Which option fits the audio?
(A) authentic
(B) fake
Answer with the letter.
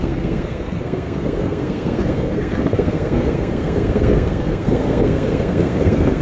B